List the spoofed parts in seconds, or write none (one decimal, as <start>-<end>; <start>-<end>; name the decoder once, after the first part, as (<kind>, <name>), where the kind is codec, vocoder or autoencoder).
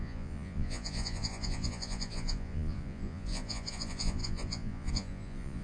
0.0-5.6 (vocoder, Vocos)